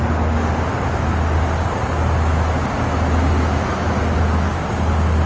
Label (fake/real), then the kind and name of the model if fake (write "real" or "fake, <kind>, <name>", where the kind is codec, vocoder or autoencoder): real